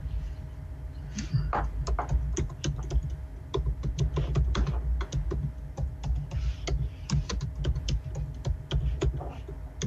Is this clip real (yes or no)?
yes